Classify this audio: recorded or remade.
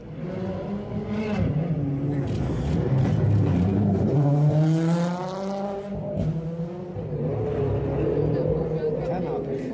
recorded